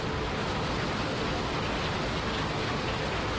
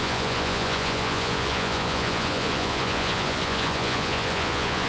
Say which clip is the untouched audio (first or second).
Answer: first